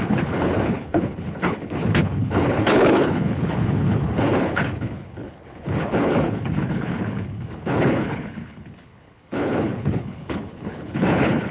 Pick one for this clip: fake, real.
fake